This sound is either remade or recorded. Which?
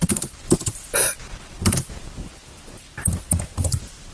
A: remade